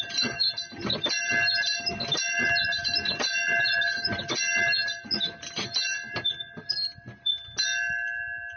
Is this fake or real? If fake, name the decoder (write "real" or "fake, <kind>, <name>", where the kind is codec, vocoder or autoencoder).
real